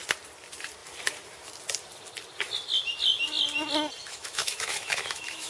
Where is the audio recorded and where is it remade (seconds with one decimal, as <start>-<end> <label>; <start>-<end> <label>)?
0.0-4.0 recorded; 4.0-5.5 remade